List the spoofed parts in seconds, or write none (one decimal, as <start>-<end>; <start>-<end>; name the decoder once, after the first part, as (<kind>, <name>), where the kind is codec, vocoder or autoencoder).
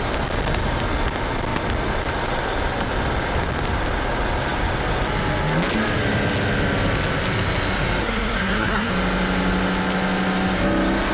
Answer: 8.0-8.9 (codec, SNAC)